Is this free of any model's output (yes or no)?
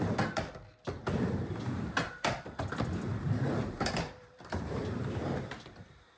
no